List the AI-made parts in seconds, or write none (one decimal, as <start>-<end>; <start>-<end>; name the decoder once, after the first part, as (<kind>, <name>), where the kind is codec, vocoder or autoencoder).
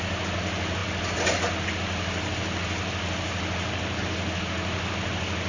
none